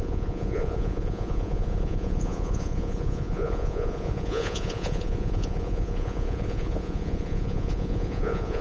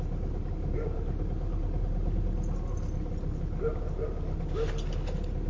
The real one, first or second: second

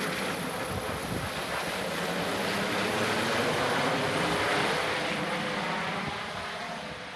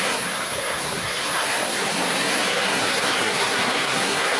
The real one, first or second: first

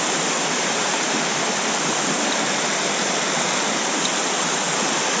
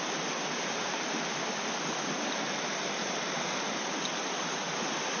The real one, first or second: second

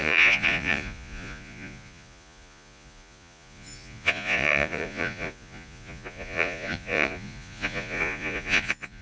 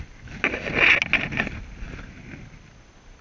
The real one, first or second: second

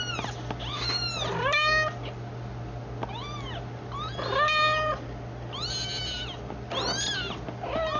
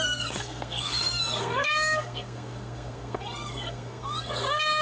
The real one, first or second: first